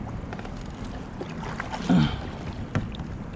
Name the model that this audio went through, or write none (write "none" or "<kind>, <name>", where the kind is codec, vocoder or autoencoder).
none